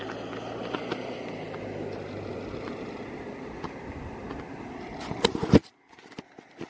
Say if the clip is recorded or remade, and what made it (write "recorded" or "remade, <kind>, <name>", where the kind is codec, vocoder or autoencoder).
recorded